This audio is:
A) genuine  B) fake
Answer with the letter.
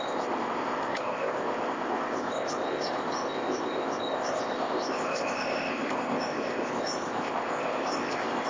B